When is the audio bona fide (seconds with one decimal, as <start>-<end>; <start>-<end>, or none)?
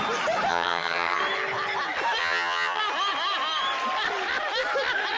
0.0-0.5; 1.2-2.2; 2.8-5.2